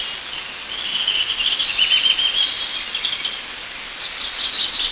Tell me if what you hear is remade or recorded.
recorded